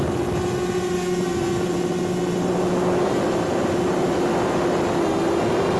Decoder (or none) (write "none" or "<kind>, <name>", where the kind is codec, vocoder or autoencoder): none